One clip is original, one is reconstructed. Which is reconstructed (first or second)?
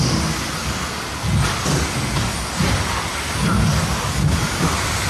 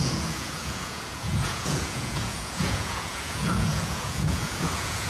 second